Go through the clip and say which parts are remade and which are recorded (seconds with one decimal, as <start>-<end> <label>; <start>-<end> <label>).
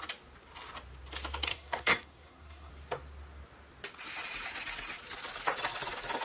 0.0-1.5 recorded; 1.5-2.7 remade; 2.7-6.2 recorded